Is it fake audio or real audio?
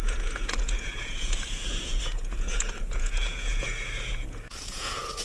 fake